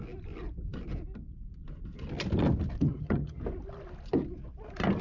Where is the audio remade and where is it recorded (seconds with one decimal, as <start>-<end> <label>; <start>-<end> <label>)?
0.0-2.9 recorded; 2.9-3.4 remade; 3.4-5.0 recorded